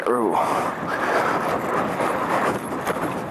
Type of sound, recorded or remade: remade